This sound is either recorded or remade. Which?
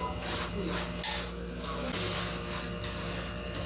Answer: recorded